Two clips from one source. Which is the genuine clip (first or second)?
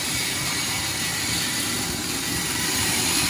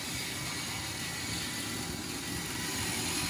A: second